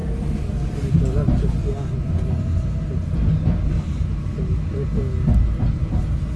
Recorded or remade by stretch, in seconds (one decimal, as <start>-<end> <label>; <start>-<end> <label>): 0.0-6.4 recorded